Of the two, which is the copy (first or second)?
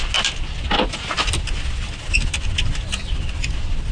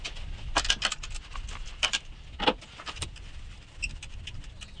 second